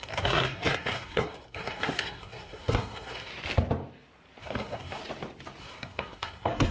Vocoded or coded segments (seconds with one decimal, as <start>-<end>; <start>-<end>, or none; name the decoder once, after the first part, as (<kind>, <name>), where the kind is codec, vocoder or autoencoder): 0.0-3.3 (codec, SNAC); 4.4-5.0; 5.6-6.7